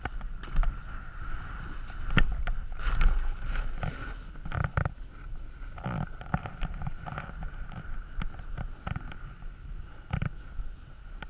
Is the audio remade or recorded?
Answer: recorded